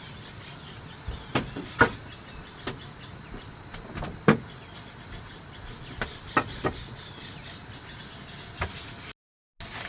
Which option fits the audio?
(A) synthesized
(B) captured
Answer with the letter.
B